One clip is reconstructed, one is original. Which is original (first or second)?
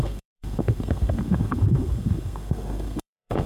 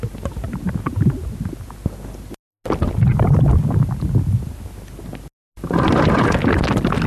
second